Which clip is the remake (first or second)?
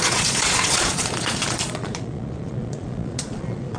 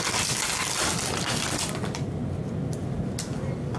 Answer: first